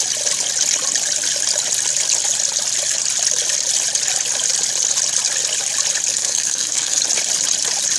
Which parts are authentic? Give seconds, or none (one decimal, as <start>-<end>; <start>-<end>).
0.0-6.1; 7.0-8.0